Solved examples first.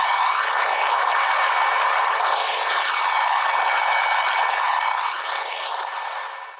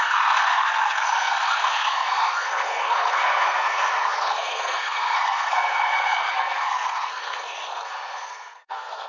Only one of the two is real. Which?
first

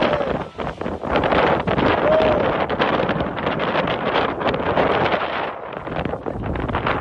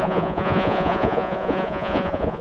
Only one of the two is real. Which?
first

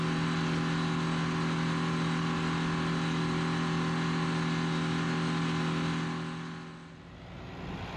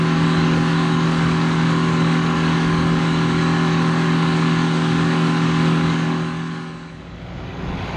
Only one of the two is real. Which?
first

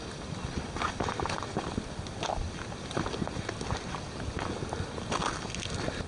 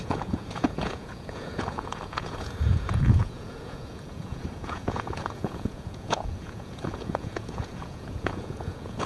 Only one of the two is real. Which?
first